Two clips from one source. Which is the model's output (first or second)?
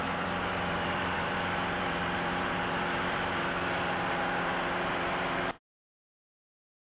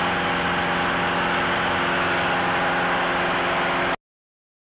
first